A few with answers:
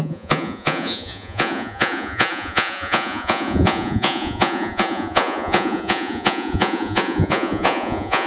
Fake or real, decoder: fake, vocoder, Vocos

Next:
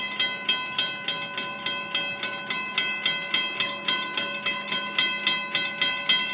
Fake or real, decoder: real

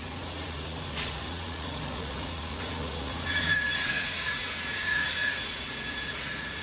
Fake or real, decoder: fake, vocoder, Vocos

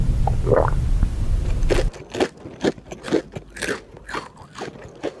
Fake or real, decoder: real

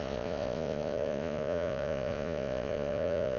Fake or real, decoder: fake, vocoder, Vocos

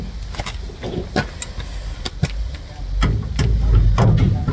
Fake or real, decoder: real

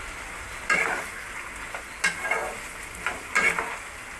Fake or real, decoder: real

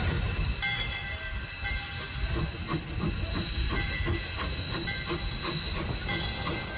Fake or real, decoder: real